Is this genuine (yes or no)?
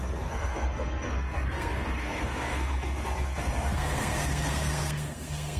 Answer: no